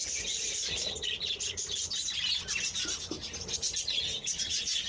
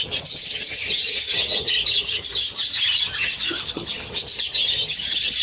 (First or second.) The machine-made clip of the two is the second